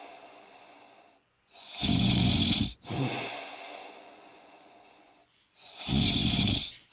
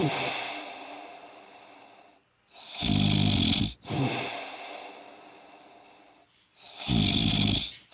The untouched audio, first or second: second